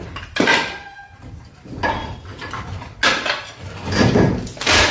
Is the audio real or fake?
real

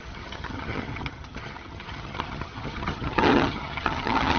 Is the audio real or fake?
fake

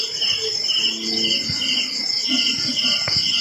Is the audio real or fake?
real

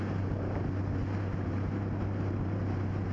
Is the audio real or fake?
real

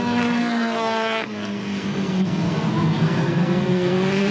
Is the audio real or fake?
fake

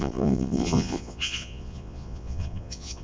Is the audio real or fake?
fake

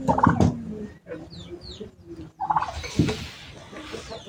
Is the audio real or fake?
real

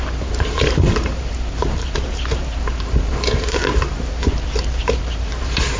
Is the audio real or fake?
fake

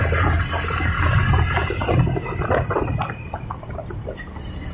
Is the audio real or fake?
real